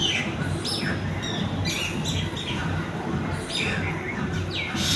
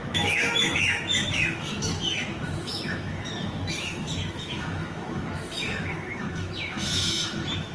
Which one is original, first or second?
first